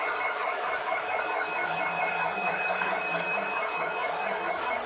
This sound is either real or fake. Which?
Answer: fake